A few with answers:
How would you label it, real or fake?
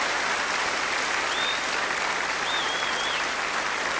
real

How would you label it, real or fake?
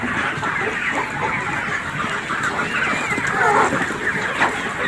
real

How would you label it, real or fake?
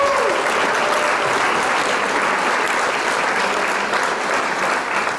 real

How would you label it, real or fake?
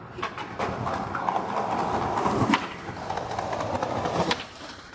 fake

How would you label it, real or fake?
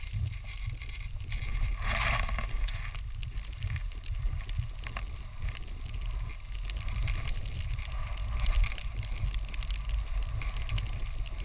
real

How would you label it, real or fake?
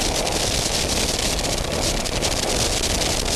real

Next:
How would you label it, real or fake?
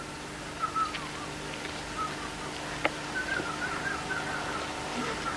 real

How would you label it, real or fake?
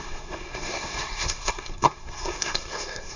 fake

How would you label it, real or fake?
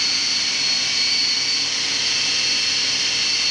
fake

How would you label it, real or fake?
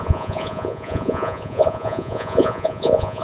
fake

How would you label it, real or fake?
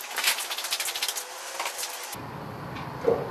real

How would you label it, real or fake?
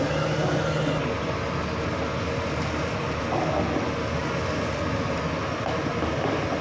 real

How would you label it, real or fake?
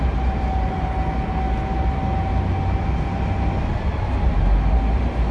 real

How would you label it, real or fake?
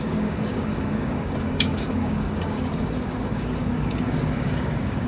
fake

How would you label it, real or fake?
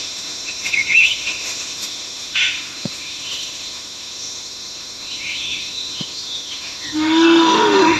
fake